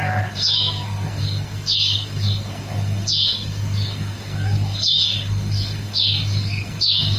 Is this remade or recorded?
remade